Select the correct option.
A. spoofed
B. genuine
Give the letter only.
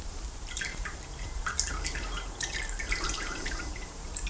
A